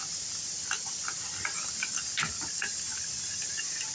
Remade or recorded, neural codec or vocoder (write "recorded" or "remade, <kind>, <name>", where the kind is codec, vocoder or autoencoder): recorded